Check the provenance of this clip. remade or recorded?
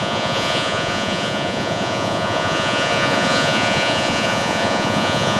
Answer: remade